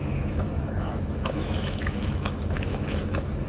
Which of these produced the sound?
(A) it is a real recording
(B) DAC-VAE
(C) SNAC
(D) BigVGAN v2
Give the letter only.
B